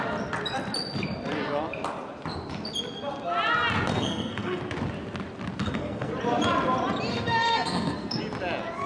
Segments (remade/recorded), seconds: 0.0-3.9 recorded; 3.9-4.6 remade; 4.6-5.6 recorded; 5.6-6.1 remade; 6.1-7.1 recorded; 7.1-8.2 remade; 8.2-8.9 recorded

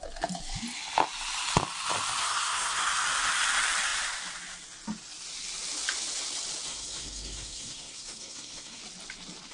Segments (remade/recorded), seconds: 0.0-2.2 recorded; 2.2-2.8 remade; 2.8-6.7 recorded; 6.7-8.8 remade; 8.8-9.5 recorded

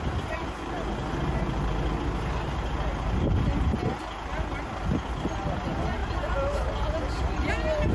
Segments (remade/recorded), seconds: 0.0-7.9 recorded

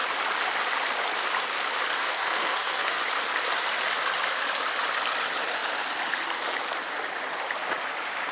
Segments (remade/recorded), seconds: 0.0-2.0 recorded; 2.0-3.0 remade; 3.0-8.3 recorded